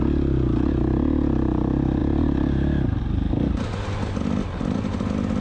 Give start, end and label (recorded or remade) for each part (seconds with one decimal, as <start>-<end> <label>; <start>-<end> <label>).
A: 0.0-5.4 recorded